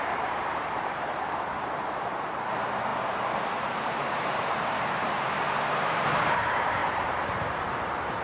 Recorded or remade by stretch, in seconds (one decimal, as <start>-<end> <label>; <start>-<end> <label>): 0.0-8.2 remade